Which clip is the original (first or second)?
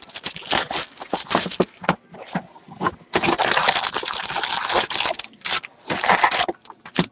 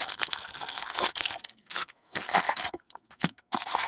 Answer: first